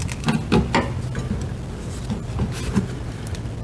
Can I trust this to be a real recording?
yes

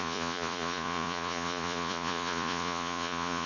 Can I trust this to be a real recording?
no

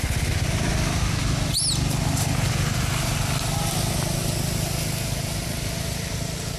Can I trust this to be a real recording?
yes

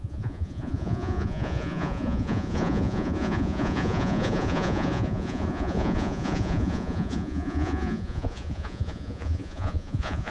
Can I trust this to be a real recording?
no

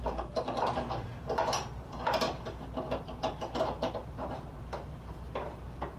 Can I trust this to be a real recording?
no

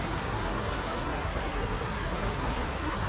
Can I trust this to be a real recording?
no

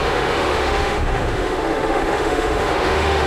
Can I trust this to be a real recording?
no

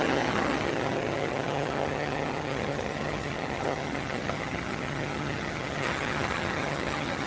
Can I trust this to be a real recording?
no